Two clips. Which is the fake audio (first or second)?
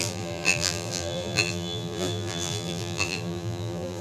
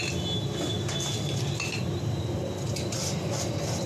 first